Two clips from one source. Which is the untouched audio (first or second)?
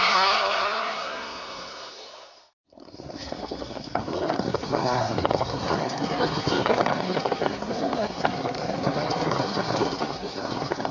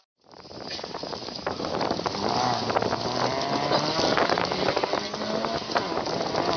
second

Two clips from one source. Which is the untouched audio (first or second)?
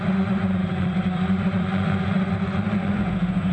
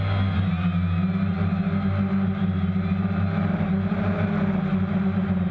second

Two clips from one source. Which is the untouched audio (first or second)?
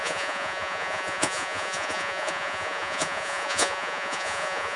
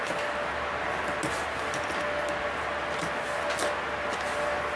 second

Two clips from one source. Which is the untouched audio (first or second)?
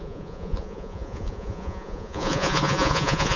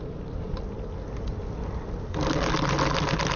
second